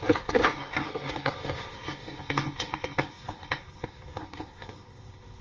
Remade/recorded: remade